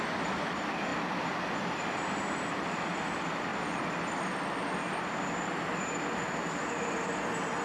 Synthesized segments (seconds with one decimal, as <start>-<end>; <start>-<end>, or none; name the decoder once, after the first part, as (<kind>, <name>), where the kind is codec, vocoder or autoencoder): 0.9-2.4 (vocoder, BigVGAN v2); 3.5-5.8